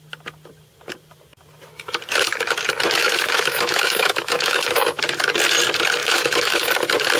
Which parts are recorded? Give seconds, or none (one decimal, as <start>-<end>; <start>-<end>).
0.0-3.0; 5.0-6.0; 6.7-7.2